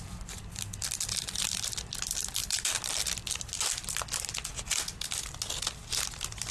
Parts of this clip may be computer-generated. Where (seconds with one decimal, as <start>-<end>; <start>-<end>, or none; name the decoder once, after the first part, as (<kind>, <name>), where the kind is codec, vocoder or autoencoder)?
none